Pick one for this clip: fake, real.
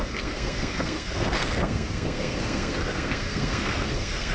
fake